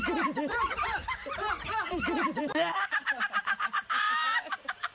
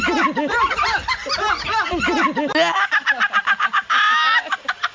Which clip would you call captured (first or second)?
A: second